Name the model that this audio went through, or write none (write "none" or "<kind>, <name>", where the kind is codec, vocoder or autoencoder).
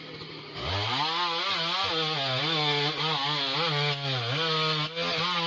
none